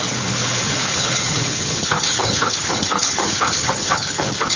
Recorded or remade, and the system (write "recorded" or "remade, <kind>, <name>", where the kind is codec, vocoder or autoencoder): remade, codec, HILCodec